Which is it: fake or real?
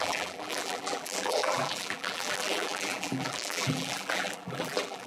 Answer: fake